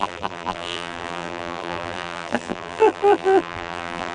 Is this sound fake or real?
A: fake